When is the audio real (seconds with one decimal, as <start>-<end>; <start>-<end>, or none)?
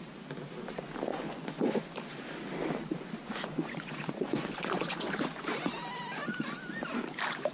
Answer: 0.0-1.1; 1.9-3.2; 5.7-7.5